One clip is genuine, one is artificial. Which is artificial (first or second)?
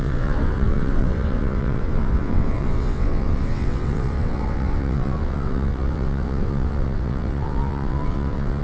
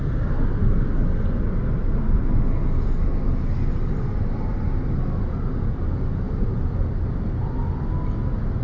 first